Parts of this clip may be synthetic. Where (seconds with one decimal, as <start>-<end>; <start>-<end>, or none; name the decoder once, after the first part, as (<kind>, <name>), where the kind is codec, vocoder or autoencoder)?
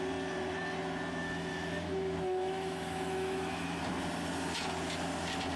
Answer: 1.5-3.8 (autoencoder, DAC-VAE)